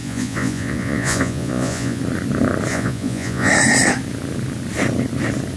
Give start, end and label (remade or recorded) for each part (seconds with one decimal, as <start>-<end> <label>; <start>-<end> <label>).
0.0-2.0 remade; 2.0-2.7 recorded; 2.7-3.5 remade; 3.5-5.6 recorded